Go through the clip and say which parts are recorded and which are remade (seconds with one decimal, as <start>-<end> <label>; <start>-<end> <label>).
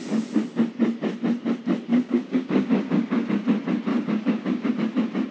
0.0-1.9 recorded; 1.9-3.3 remade; 3.3-3.9 recorded; 3.9-4.7 remade; 4.7-5.3 recorded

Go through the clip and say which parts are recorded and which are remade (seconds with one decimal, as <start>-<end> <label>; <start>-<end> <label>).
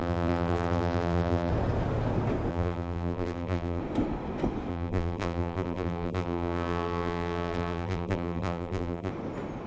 0.0-1.5 remade; 1.5-2.5 recorded; 2.5-3.8 remade; 3.8-4.7 recorded; 4.7-9.1 remade; 9.1-9.7 recorded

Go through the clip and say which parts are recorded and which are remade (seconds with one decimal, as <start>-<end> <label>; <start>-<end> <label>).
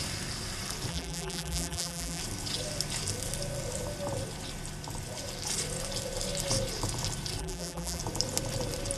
0.0-0.9 recorded; 0.9-2.2 remade; 2.2-7.4 recorded; 7.4-8.0 remade; 8.0-9.0 recorded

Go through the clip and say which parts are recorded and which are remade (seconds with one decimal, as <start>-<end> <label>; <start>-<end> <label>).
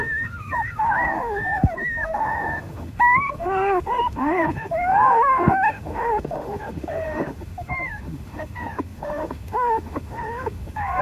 0.0-11.0 remade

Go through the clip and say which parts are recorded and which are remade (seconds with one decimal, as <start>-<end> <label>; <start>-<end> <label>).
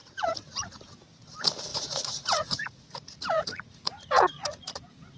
0.0-0.8 remade; 0.8-1.7 recorded; 1.7-4.8 remade; 4.8-5.2 recorded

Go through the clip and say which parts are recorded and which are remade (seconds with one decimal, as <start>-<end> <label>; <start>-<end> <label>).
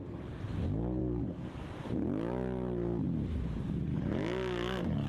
0.0-1.0 recorded; 1.0-1.9 remade; 1.9-3.9 recorded; 3.9-5.1 remade